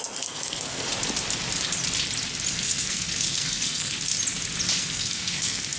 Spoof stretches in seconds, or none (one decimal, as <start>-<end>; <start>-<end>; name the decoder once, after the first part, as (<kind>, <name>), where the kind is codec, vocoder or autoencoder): 0.0-0.9 (codec, SNAC); 2.5-4.1; 4.8-5.8